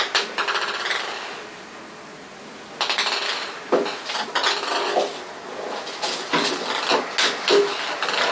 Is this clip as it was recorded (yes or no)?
yes